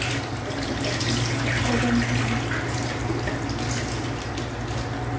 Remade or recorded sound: recorded